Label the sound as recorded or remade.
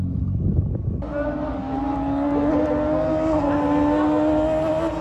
recorded